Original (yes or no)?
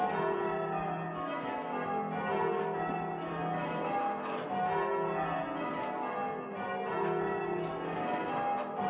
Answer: yes